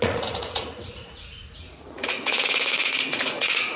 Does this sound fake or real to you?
fake